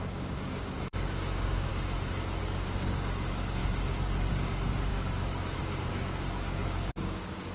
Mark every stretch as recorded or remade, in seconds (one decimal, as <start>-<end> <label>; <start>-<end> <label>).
0.0-1.7 remade; 1.7-2.4 recorded; 2.4-3.6 remade; 3.6-4.3 recorded; 4.3-7.5 remade